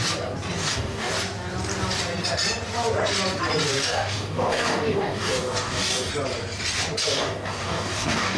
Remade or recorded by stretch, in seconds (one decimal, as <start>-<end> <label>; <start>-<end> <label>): 0.0-0.6 recorded; 0.6-1.1 remade; 1.1-3.7 recorded; 3.7-6.1 remade; 6.1-7.0 recorded; 7.0-8.4 remade